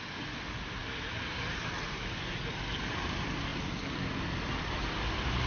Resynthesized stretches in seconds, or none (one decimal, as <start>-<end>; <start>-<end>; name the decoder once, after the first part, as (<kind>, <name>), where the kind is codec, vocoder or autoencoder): none